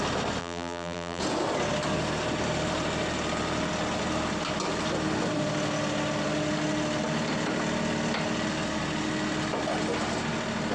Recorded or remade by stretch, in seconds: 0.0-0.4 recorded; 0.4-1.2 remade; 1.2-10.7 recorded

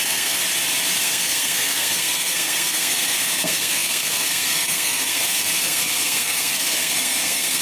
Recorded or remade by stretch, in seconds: 0.0-0.4 remade; 0.4-1.0 recorded; 1.0-7.6 remade

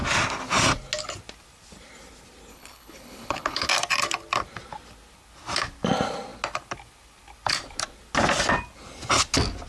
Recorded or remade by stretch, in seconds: 0.0-2.5 recorded; 2.5-3.7 remade; 3.7-9.7 recorded